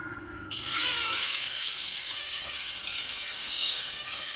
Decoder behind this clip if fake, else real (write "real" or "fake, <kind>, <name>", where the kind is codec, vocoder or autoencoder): fake, codec, SNAC